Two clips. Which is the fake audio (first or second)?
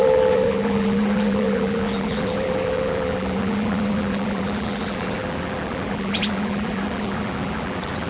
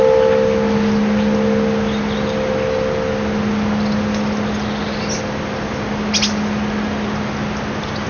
first